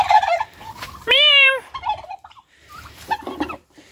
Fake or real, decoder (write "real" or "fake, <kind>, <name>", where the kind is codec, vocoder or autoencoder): fake, vocoder, BigVGAN v2